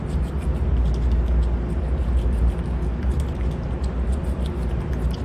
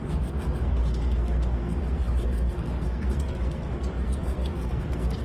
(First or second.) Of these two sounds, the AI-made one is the second